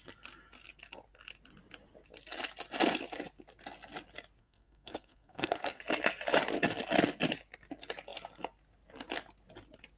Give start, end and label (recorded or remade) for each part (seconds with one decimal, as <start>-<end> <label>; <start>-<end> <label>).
0.0-4.4 recorded; 4.4-5.8 remade; 5.8-10.0 recorded